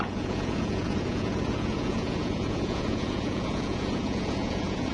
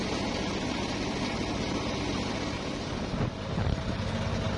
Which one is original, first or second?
second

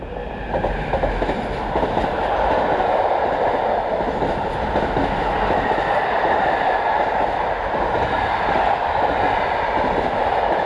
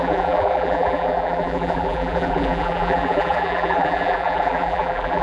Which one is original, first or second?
first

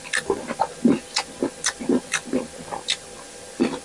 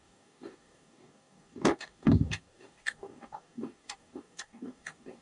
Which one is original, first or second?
first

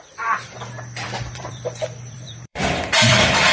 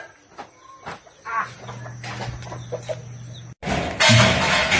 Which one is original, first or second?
second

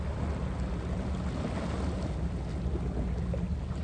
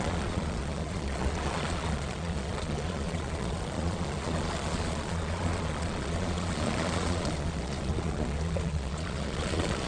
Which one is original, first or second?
first